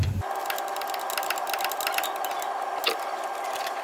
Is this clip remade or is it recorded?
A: recorded